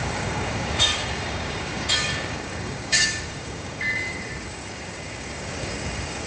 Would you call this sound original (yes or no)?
no